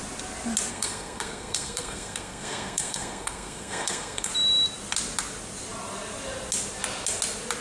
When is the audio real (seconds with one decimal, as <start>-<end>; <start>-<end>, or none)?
0.0-0.7; 4.3-7.6